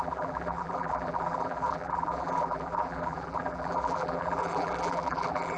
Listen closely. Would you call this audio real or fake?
fake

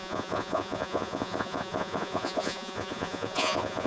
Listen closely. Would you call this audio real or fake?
fake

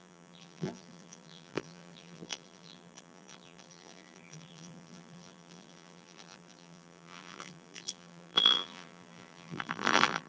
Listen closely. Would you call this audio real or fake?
fake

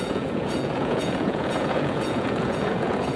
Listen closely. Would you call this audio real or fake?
fake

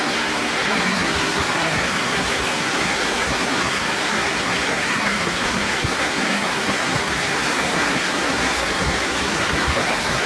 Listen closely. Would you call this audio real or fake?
fake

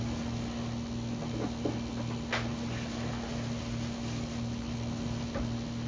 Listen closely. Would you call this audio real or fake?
real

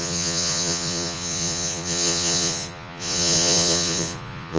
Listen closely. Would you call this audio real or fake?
fake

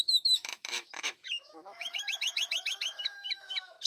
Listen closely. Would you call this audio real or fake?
fake